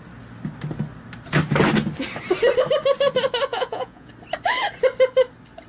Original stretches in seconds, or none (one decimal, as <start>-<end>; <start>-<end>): 0.0-3.5; 4.1-5.7